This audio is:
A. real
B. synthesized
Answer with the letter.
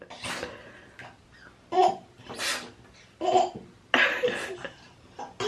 A